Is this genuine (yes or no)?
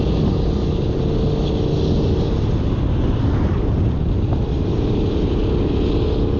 yes